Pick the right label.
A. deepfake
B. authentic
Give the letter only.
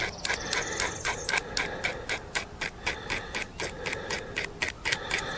B